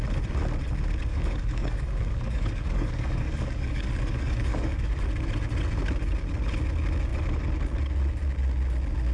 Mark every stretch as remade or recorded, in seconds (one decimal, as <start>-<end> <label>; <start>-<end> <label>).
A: 0.0-1.1 recorded; 1.1-5.0 remade; 5.0-9.1 recorded